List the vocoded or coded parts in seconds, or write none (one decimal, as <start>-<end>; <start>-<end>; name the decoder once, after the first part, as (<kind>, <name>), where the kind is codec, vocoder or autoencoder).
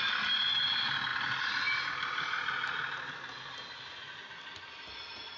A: none